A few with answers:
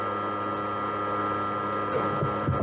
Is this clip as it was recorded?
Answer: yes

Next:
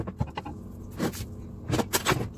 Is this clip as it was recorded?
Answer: yes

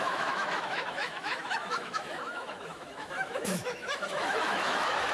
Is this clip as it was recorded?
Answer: no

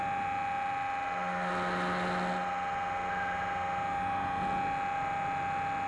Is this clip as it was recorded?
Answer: yes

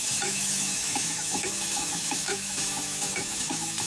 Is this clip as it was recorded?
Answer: no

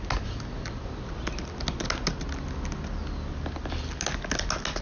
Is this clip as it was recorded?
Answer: yes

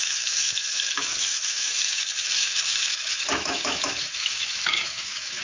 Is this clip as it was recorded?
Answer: no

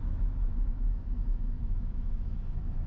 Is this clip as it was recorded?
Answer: no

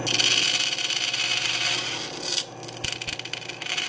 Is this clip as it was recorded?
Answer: yes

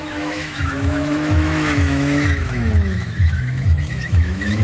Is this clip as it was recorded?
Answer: no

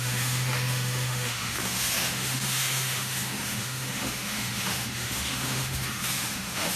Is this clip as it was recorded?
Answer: no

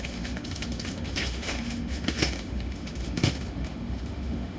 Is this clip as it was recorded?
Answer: no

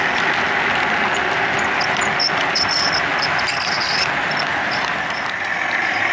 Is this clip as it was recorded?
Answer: yes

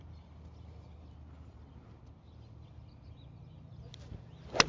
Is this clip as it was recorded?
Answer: yes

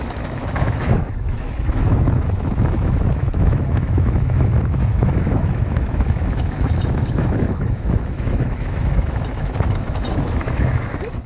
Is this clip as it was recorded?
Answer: no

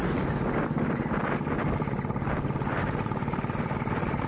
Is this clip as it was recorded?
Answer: yes